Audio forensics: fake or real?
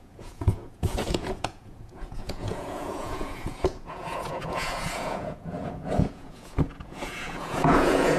fake